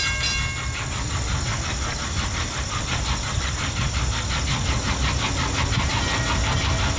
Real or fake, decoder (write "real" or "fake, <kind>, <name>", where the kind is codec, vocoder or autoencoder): real